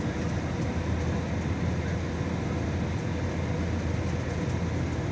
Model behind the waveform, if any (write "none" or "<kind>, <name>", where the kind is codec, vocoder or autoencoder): none